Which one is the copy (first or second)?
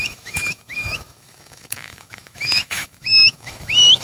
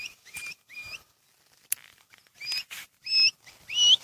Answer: first